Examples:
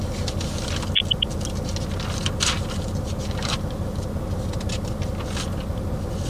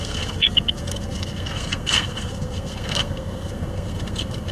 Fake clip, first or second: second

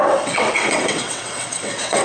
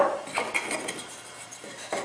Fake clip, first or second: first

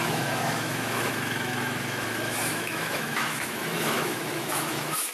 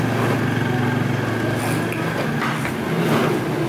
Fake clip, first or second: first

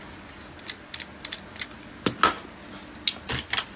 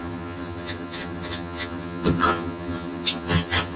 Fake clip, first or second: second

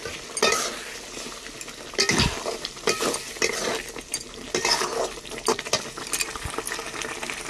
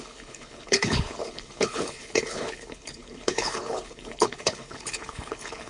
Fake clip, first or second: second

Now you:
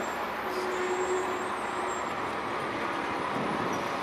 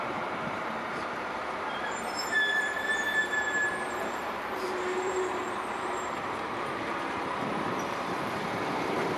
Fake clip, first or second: second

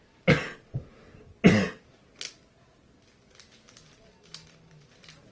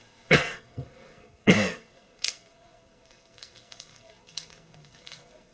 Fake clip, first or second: second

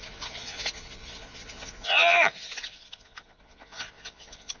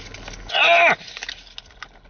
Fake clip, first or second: first